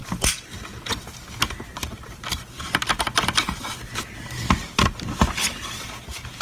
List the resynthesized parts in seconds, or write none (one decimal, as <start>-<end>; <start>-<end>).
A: none